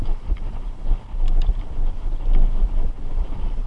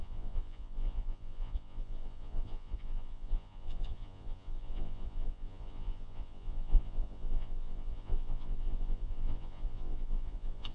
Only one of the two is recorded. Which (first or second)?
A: first